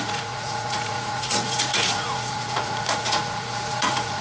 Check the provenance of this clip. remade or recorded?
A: remade